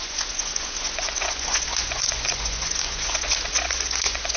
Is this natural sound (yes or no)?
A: no